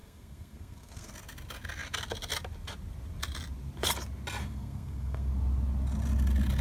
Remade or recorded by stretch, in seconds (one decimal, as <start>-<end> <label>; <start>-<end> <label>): 0.0-1.1 remade; 1.1-4.4 recorded; 4.4-5.3 remade; 5.3-6.6 recorded